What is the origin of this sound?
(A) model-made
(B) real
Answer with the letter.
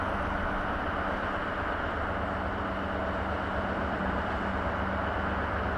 B